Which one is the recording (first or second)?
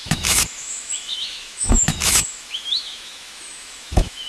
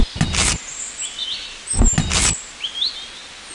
second